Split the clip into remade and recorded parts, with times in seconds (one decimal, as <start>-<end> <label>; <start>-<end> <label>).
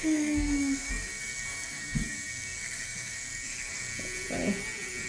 0.0-3.9 remade; 3.9-5.1 recorded